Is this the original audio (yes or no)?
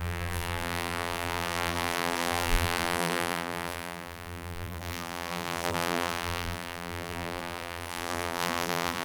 no